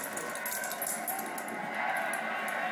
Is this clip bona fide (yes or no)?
yes